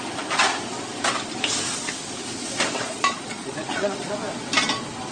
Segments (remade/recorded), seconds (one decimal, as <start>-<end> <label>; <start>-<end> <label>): 0.0-2.4 recorded; 2.4-4.1 remade; 4.1-5.1 recorded